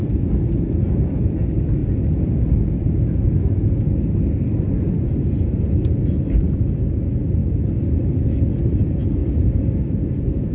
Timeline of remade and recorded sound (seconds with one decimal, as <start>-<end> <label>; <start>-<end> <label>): 0.0-1.2 remade; 1.2-1.8 recorded; 1.8-6.6 remade; 6.6-9.2 recorded; 9.2-10.5 remade